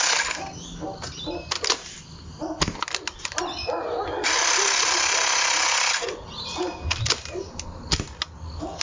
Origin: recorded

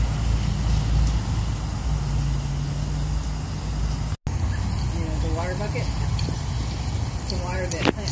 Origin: recorded